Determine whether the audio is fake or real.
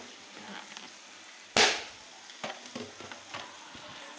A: real